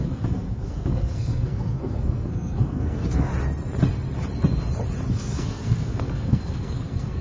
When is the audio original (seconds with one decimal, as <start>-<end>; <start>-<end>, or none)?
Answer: 3.3-5.1

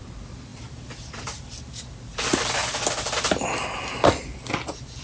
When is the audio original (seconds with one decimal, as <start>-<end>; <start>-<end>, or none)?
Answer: 0.0-5.0

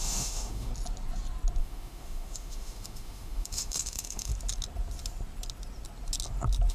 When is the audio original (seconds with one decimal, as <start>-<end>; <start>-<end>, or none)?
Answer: 0.7-1.6; 4.3-6.7

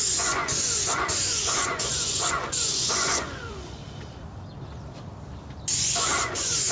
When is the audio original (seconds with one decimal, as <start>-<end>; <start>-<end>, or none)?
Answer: 3.8-5.8

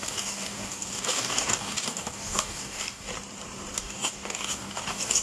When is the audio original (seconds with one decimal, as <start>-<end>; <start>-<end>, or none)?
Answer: 3.1-3.8

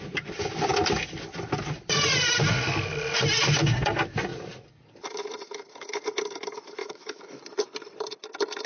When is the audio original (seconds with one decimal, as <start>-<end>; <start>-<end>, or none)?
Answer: 0.0-6.8; 7.4-8.7